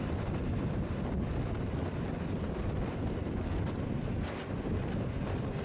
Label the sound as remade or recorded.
recorded